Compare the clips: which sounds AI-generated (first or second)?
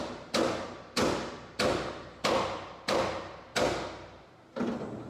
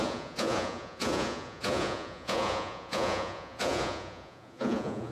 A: second